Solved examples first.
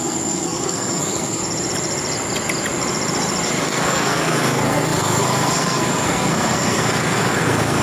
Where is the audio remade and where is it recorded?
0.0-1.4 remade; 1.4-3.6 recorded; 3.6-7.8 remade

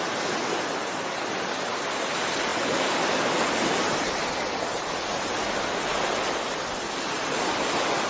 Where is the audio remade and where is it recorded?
0.0-8.1 recorded

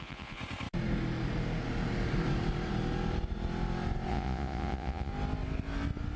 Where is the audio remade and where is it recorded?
0.0-0.4 remade; 0.4-4.1 recorded; 4.1-5.1 remade; 5.1-6.2 recorded